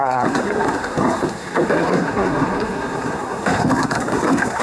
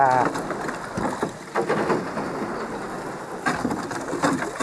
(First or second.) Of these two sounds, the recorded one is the second